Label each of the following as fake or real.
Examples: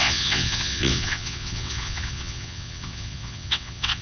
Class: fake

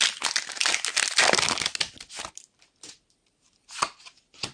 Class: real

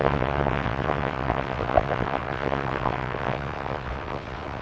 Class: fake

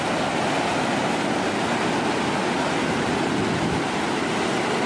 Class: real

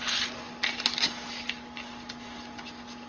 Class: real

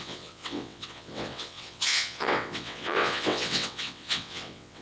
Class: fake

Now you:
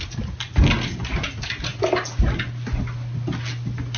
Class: real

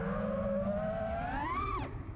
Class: real